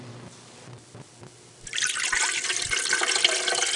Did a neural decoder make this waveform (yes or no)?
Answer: yes